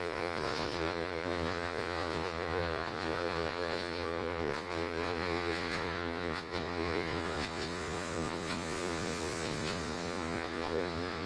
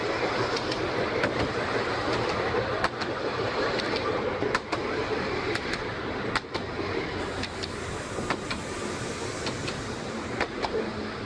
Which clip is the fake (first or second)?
first